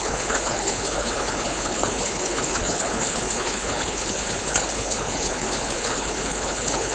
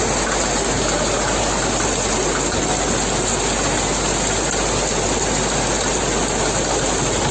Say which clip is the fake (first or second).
first